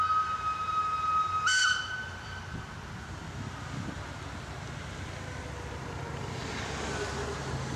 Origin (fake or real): real